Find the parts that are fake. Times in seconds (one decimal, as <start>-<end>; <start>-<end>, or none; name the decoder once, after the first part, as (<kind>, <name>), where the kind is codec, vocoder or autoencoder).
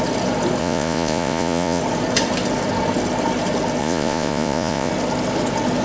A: 0.6-1.8 (vocoder, Vocos); 3.8-4.9